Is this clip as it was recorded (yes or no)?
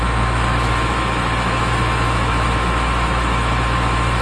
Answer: no